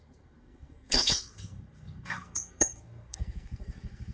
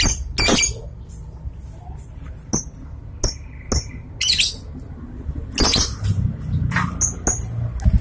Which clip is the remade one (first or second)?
first